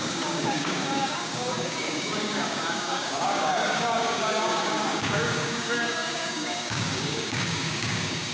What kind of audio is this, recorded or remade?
remade